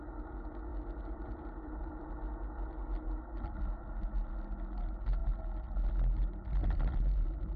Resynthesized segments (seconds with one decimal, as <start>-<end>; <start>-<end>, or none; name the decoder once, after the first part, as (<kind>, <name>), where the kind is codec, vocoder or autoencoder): 0.7-2.1 (vocoder, BigVGAN v2)